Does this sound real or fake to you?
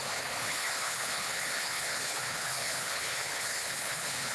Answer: fake